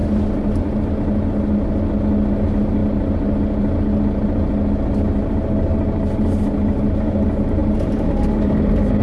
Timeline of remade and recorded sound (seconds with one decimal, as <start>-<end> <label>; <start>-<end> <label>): 0.0-9.0 recorded